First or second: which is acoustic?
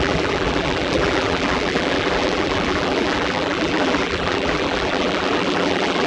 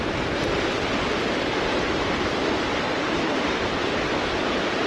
second